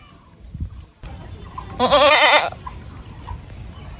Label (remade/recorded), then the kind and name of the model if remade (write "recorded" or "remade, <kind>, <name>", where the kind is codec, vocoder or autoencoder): recorded